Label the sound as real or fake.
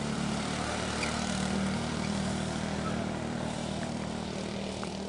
fake